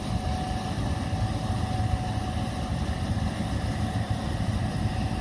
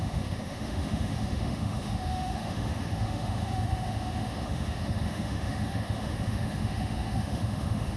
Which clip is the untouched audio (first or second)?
first